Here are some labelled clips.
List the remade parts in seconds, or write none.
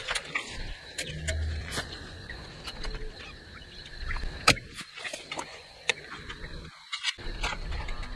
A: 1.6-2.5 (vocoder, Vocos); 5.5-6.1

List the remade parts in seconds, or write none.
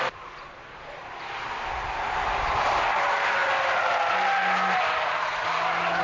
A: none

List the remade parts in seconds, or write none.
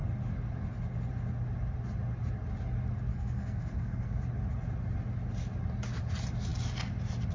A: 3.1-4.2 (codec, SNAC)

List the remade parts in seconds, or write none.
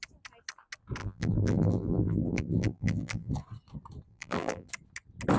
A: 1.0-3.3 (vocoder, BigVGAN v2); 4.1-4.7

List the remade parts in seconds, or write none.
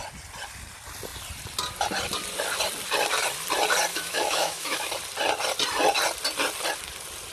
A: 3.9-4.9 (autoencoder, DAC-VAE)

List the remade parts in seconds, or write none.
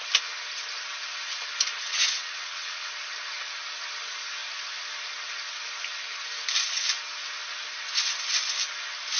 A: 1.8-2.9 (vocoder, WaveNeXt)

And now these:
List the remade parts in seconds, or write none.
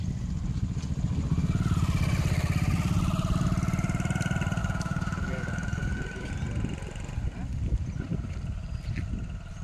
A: 4.6-6.3 (codec, DAC)